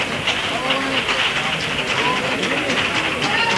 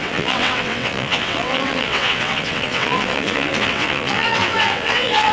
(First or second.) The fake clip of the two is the second